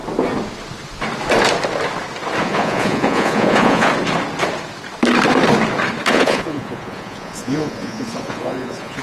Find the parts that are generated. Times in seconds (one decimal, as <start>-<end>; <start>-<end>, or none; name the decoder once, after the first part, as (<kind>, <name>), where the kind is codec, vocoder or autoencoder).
2.4-3.9 (vocoder, Vocos); 6.1-9.0